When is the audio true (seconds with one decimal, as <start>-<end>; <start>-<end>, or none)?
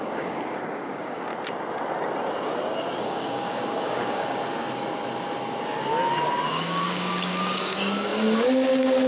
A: 1.3-3.0; 4.4-6.5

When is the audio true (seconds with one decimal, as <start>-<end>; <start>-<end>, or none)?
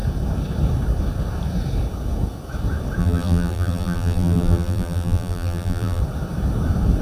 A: 0.0-3.0; 6.0-7.0